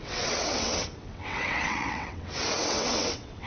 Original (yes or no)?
no